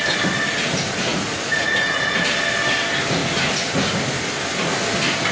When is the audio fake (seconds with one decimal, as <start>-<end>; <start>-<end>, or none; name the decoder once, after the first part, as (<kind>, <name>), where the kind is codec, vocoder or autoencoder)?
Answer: 1.1-2.2 (vocoder, Vocos)